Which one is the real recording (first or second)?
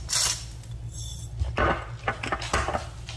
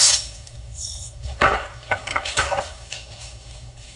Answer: first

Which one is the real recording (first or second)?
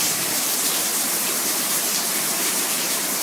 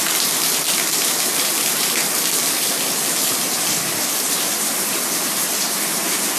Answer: second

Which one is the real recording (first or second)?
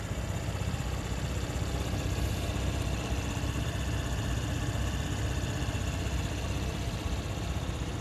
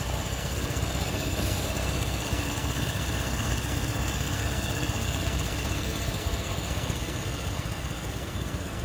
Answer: first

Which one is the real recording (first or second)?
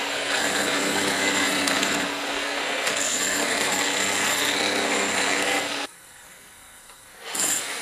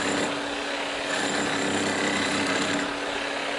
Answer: second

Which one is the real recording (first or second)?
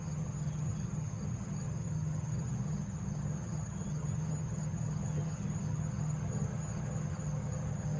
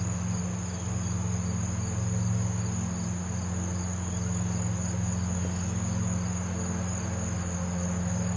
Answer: second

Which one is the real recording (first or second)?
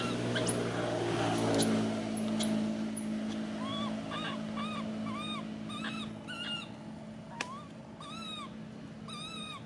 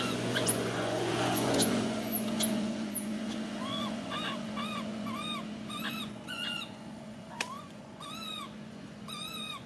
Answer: first